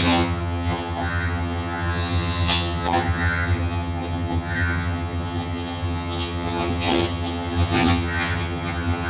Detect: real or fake fake